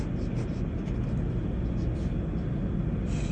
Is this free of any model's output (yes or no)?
yes